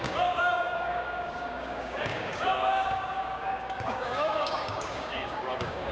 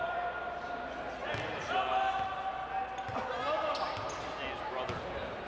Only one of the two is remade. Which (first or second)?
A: first